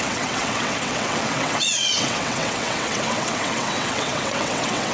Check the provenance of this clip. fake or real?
fake